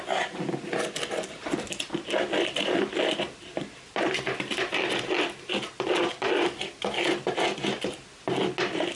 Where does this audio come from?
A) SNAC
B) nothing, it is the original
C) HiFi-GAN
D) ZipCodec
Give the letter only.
B